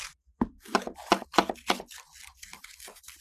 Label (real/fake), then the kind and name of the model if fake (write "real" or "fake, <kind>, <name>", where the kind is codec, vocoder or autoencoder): real